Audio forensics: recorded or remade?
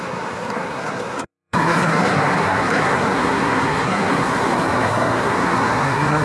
remade